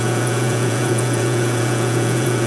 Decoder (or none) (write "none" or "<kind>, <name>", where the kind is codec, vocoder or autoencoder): vocoder, Vocos